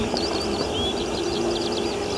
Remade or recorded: recorded